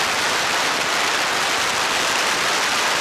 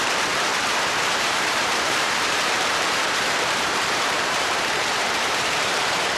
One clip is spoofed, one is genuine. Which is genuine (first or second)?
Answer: first